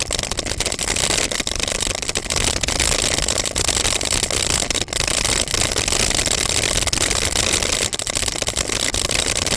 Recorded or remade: recorded